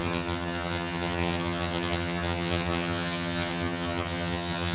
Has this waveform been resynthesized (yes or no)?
yes